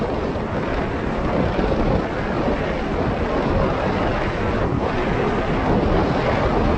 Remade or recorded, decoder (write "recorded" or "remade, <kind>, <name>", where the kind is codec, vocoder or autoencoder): recorded